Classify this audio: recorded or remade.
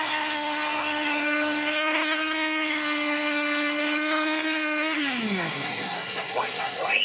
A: remade